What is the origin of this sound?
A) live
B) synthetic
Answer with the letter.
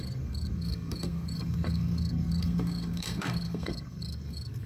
B